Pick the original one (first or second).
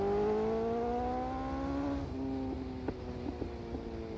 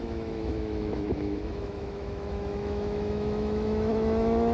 first